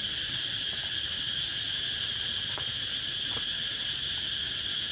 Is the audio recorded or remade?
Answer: recorded